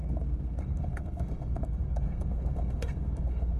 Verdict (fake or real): fake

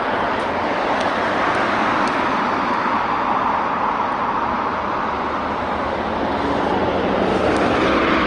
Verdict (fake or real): real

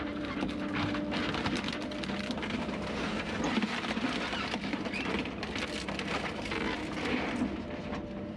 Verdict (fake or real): real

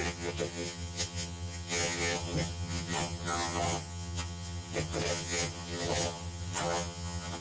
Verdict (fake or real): fake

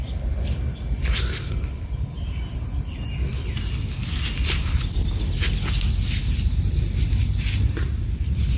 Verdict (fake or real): real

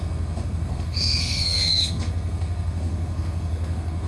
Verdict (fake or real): fake